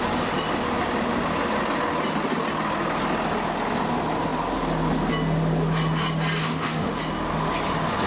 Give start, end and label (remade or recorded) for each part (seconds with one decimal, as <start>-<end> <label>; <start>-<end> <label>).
0.0-6.4 recorded; 6.4-6.9 remade; 6.9-8.1 recorded